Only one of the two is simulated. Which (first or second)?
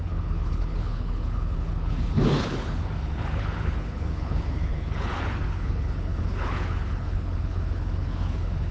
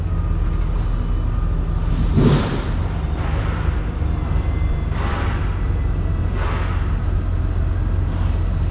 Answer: first